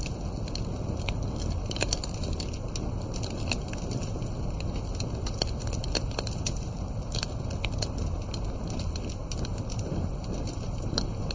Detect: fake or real real